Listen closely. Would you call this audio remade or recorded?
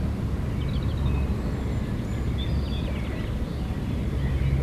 recorded